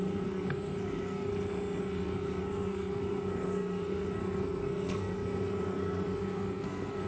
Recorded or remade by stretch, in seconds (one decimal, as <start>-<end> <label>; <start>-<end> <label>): 0.0-1.3 remade; 1.3-1.8 recorded; 1.8-7.1 remade